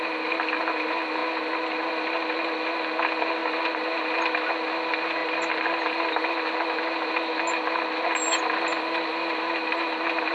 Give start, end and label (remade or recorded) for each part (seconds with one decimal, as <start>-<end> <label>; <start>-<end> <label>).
0.0-10.3 recorded